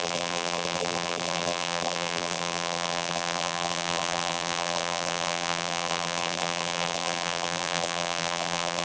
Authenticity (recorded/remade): remade